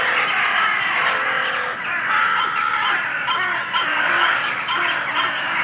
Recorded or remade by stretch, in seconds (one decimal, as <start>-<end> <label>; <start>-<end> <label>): 0.0-3.9 recorded; 3.9-4.7 remade; 4.7-5.6 recorded